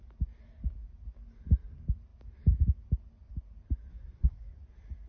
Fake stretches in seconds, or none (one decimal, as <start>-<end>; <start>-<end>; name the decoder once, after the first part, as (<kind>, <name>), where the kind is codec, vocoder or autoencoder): 3.9-4.5 (codec, SNAC)